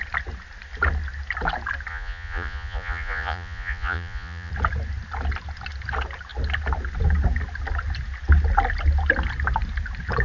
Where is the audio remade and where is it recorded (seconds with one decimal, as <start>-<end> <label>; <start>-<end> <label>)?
0.0-1.9 recorded; 1.9-4.5 remade; 4.5-10.2 recorded